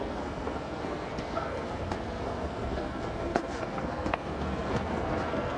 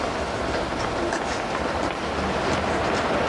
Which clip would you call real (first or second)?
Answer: second